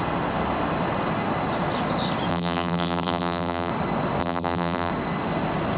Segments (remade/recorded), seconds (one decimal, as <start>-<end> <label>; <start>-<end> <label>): 0.0-2.3 recorded; 2.3-3.7 remade; 3.7-4.2 recorded; 4.2-4.9 remade; 4.9-5.8 recorded